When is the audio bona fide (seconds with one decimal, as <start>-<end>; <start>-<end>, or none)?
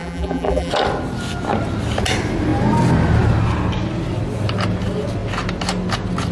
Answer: 0.7-6.3